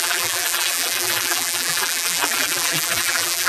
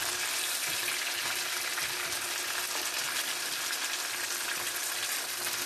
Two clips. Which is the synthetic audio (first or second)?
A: first